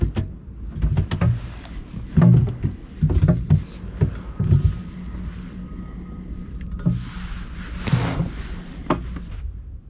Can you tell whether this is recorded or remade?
recorded